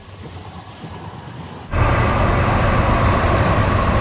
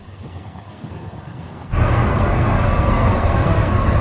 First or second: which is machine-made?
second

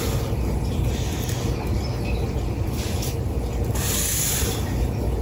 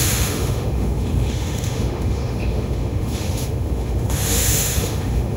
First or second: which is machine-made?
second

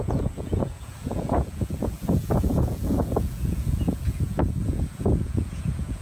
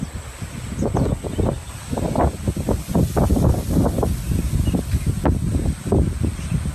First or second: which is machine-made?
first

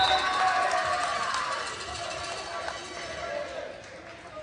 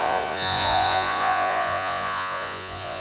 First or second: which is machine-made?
second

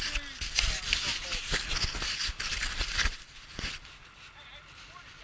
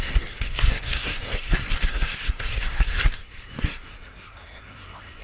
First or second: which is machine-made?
second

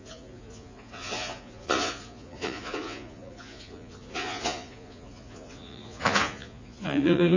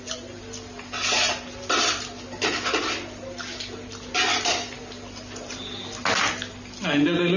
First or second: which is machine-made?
first